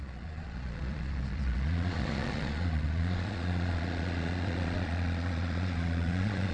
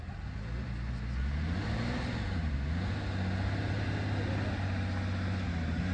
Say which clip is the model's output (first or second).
first